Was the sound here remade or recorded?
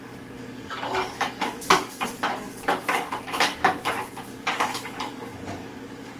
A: remade